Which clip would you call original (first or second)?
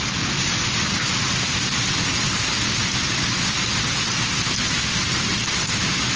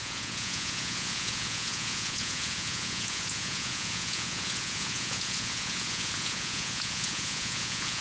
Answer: first